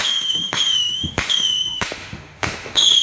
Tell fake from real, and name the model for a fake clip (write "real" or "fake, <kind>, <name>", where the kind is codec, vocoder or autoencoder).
fake, autoencoder, DAC-VAE